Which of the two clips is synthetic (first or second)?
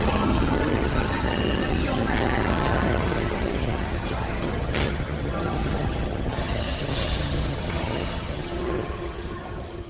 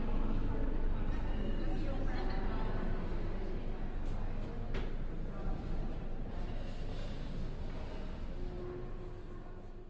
first